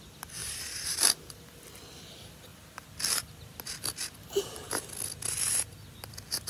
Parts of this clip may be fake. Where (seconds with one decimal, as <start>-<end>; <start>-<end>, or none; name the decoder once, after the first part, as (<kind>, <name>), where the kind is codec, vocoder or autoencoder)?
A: 0.4-1.3 (vocoder, BigVGAN v2)